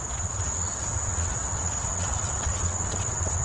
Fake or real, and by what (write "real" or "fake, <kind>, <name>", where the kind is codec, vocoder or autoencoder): fake, vocoder, Vocos